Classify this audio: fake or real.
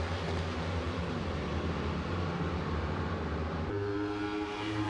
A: fake